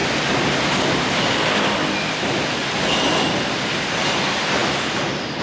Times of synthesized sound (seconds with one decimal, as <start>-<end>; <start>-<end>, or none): none